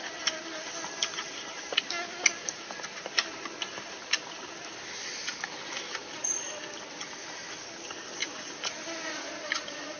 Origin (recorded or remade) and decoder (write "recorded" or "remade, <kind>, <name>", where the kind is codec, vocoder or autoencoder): recorded